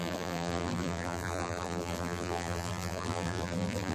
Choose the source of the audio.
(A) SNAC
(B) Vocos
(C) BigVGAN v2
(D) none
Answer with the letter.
C